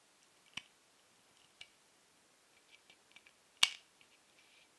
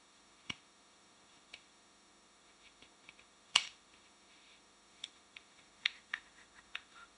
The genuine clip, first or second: first